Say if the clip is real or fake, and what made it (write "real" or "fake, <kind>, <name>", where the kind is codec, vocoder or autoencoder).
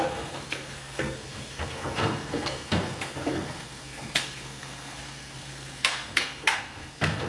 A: fake, codec, SNAC